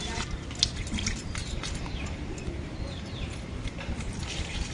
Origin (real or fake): real